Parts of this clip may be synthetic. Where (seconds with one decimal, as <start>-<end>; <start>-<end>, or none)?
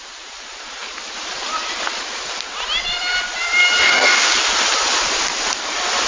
3.8-4.3